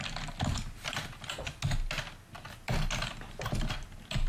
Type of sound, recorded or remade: recorded